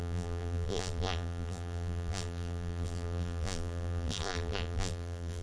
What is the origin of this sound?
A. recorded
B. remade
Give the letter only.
B